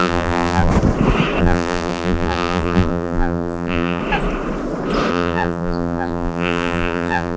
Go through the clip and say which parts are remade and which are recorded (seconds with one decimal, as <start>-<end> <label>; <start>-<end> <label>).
0.0-0.7 remade; 0.7-1.4 recorded; 1.4-4.0 remade; 4.0-5.1 recorded; 5.1-7.4 remade